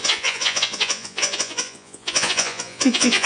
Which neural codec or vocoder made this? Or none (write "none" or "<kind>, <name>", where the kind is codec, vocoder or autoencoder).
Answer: vocoder, Vocos